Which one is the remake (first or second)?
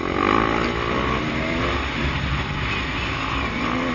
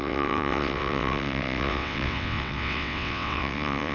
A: second